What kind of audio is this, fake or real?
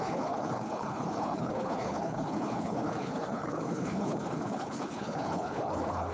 fake